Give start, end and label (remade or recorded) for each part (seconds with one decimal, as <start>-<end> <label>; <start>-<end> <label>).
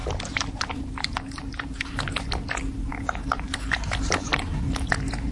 0.0-2.2 remade; 2.2-2.9 recorded; 2.9-4.5 remade; 4.5-5.3 recorded